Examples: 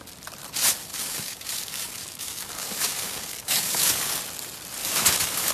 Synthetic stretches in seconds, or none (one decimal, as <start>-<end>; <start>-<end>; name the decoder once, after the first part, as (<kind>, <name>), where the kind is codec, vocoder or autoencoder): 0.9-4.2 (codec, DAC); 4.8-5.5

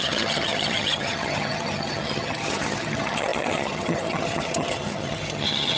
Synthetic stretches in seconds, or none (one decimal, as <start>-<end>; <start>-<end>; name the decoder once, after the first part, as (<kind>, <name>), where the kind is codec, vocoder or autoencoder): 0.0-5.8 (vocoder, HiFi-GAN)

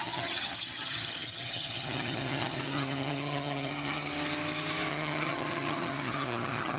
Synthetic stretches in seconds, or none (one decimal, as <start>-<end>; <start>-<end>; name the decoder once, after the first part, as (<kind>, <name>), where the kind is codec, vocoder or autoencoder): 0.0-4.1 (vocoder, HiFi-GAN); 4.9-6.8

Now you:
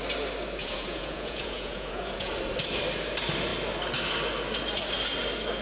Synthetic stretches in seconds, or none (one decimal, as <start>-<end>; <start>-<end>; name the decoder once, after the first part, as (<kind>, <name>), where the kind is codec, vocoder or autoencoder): 0.6-2.3 (vocoder, Vocos)

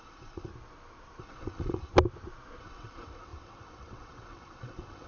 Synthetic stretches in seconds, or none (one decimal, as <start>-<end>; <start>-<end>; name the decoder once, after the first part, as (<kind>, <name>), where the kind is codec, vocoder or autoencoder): 0.0-0.5 (vocoder, WaveNeXt); 1.2-1.9; 2.6-5.1

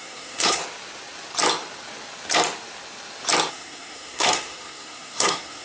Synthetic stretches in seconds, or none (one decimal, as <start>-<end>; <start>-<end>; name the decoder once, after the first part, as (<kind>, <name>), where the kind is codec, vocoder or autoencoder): 0.0-0.6 (codec, SNAC); 3.5-5.6

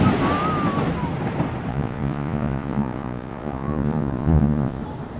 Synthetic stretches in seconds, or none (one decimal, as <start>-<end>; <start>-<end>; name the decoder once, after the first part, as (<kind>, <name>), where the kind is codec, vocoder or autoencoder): 1.7-4.8 (vocoder, Vocos)